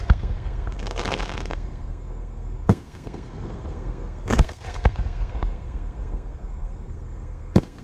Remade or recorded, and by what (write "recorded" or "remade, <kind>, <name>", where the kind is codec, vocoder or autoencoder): remade, codec, SNAC